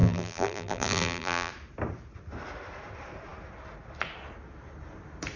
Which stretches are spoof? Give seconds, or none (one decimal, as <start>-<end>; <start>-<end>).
0.0-1.5